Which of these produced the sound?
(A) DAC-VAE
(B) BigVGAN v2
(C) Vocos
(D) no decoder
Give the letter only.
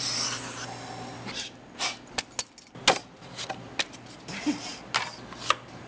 D